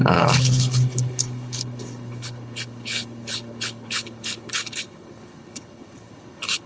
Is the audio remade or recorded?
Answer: remade